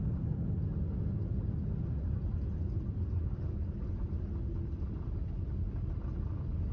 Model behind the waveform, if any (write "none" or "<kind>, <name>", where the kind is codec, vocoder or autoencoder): none